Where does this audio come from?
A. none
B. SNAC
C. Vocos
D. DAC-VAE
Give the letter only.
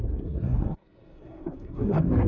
B